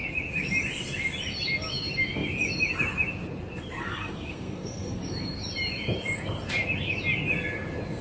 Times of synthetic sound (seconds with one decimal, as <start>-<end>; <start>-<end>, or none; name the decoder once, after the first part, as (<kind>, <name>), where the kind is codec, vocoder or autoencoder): 3.8-5.0 (codec, SNAC)